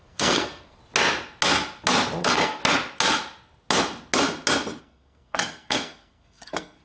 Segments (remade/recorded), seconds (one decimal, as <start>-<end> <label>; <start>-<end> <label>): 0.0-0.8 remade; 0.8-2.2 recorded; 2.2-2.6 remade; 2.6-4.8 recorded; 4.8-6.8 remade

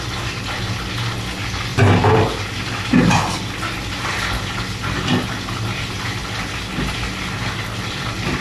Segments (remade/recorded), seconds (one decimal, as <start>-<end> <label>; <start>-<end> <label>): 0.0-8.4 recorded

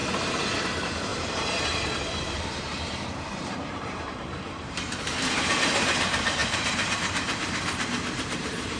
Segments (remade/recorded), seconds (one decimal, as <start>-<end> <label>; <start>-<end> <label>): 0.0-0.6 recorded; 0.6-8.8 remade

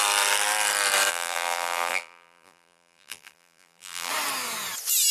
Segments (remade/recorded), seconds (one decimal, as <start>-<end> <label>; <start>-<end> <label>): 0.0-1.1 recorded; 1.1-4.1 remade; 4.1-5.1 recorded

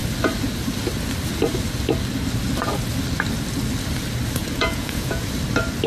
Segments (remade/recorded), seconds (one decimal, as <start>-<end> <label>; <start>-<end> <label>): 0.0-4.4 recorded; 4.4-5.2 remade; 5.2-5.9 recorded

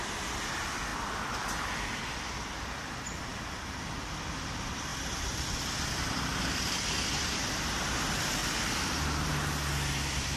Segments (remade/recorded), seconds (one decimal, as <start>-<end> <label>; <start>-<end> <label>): 0.0-4.9 recorded; 4.9-6.6 remade; 6.6-10.4 recorded